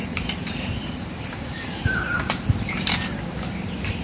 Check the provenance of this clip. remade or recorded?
remade